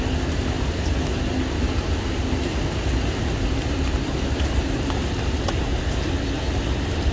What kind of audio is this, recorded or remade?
recorded